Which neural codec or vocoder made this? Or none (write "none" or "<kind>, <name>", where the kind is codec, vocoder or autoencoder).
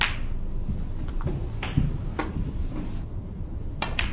none